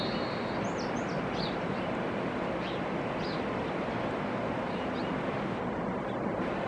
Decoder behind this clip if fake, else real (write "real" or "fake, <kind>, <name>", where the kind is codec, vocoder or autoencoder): real